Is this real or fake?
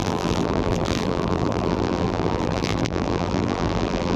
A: fake